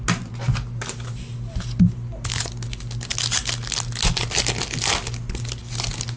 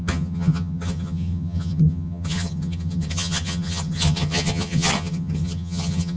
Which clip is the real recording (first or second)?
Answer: first